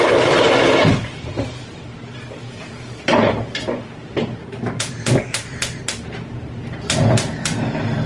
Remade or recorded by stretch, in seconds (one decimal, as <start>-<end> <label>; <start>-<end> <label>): 0.0-4.4 remade; 4.4-5.9 recorded; 5.9-8.1 remade